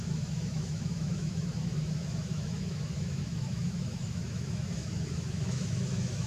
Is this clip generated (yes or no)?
yes